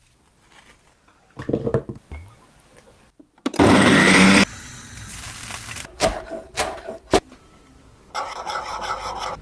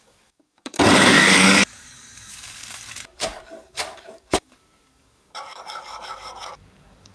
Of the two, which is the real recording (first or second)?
first